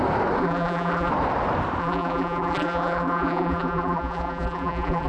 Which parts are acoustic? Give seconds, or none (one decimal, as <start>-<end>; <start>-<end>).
0.0-0.4; 1.1-1.8